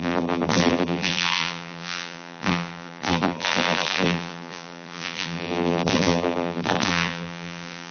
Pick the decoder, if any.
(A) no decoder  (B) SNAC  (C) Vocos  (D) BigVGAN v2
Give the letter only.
D